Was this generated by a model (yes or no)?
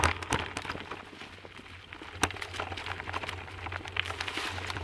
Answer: no